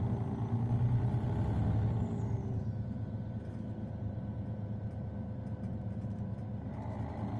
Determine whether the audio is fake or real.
real